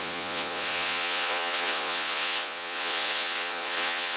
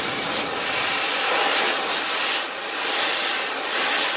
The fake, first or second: first